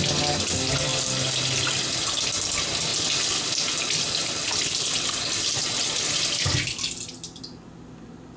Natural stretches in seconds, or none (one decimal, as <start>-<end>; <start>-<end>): 0.0-8.4